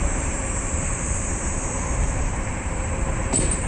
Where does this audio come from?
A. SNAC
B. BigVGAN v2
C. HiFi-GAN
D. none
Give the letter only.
B